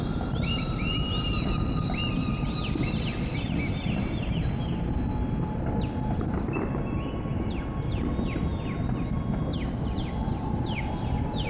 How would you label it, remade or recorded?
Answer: recorded